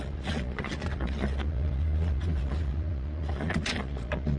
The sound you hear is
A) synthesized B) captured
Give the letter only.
A